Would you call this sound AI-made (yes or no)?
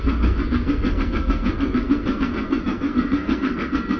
yes